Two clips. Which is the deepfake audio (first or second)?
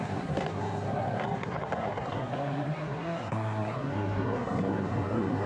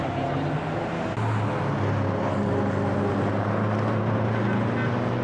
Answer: first